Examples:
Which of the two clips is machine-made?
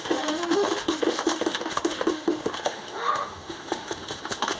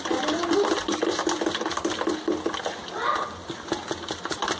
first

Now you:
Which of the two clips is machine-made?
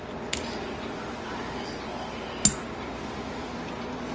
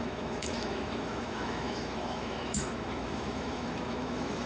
second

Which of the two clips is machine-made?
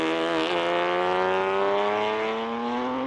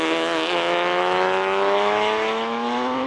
second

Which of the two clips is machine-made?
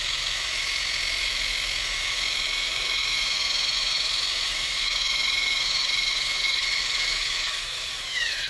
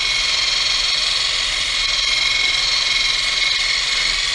first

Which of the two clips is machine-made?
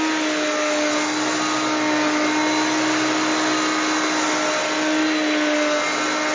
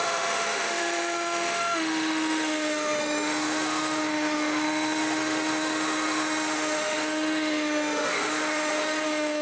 second